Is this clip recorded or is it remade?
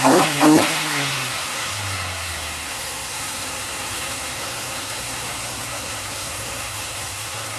remade